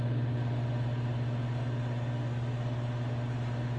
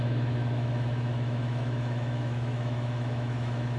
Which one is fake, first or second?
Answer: second